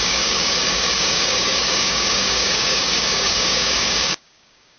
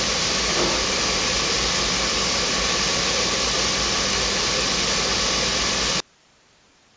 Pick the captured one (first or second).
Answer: second